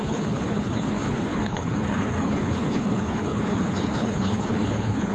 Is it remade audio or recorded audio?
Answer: remade